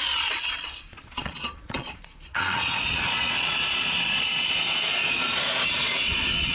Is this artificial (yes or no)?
yes